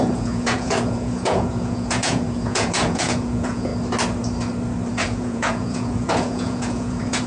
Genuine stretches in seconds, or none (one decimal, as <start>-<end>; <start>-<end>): 3.7-4.9